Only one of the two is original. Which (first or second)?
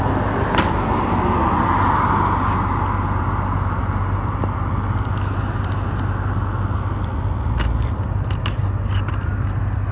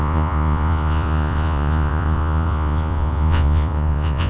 first